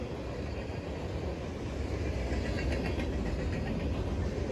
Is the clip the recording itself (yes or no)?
yes